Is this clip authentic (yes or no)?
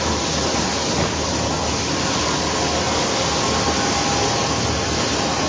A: yes